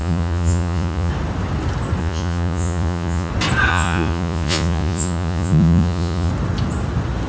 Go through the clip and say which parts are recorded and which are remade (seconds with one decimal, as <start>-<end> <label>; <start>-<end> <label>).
0.0-1.1 remade; 1.1-2.0 recorded; 2.0-3.3 remade; 3.3-3.7 recorded; 3.7-6.3 remade; 6.3-7.3 recorded